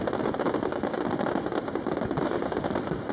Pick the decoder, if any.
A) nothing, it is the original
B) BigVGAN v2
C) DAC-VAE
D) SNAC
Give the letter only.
B